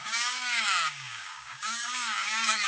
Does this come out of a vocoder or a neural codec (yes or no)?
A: yes